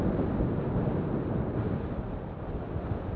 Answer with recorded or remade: recorded